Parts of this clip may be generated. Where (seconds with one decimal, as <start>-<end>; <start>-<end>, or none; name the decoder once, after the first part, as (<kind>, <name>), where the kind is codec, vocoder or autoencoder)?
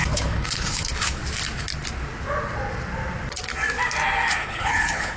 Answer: 0.0-1.2 (codec, HILCodec); 4.3-5.2